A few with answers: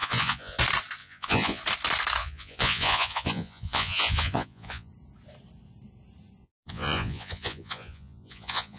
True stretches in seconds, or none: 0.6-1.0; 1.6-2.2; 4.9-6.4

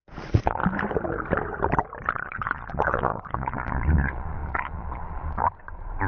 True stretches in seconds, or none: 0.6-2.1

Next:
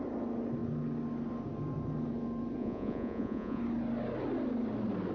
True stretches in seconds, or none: 0.0-2.6; 3.6-5.1

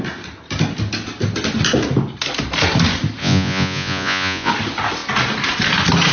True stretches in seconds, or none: 0.0-3.2; 4.5-6.1

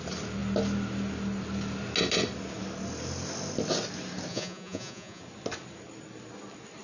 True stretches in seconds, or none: 0.0-4.3; 5.2-6.8

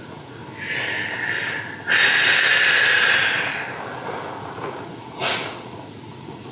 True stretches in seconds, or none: 0.4-4.3